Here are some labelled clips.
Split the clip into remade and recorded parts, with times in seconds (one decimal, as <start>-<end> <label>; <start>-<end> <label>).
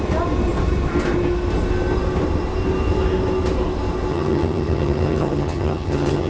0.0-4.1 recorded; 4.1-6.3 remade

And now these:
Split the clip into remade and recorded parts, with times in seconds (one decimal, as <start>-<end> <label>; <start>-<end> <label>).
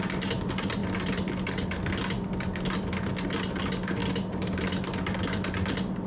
0.0-6.1 recorded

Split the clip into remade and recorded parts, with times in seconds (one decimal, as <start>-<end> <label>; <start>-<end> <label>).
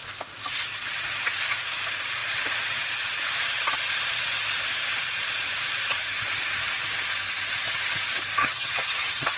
0.0-8.4 recorded; 8.4-9.4 remade